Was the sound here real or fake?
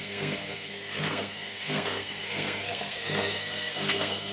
fake